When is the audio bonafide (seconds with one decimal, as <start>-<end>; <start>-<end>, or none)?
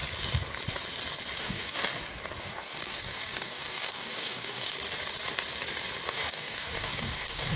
0.0-1.4; 1.8-2.4; 4.8-6.1